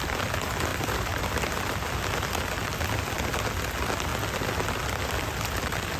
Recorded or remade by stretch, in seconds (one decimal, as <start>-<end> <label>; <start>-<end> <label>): 0.0-6.0 recorded